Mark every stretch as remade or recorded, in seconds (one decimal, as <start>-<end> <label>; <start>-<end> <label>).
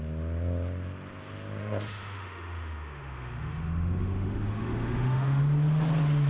0.0-1.6 recorded; 1.6-5.4 remade; 5.4-6.3 recorded